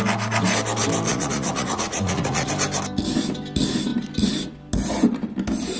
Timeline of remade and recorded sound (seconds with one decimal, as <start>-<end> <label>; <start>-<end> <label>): 0.0-1.1 recorded; 1.1-2.5 remade; 2.5-5.8 recorded